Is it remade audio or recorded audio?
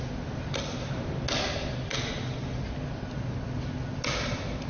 recorded